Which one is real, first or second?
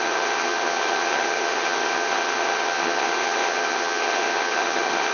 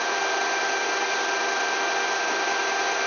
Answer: second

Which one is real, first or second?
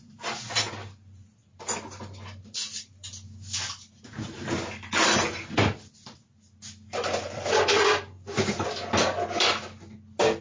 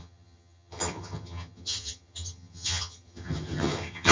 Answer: first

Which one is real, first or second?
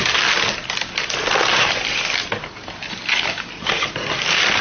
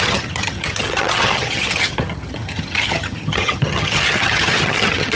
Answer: first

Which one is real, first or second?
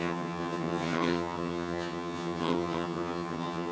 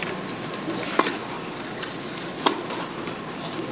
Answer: second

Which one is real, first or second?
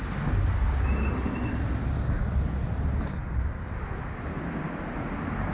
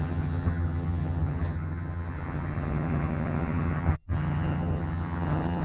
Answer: first